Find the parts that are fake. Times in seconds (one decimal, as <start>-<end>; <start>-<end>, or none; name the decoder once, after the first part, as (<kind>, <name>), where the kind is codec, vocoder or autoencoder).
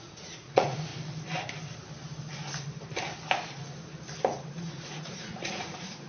0.0-0.9 (vocoder, Vocos); 4.5-6.1